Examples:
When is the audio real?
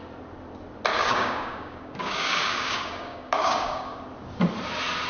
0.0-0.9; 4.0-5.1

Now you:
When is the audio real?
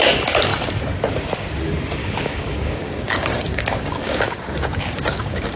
0.0-2.0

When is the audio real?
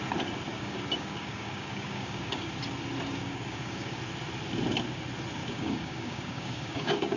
0.0-0.5; 2.5-3.2; 4.0-5.4